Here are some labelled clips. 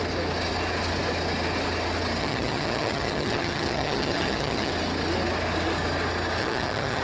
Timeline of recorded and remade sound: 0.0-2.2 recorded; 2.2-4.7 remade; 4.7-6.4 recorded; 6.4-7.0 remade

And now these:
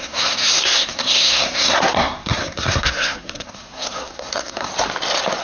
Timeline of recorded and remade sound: 0.0-4.7 remade; 4.7-5.4 recorded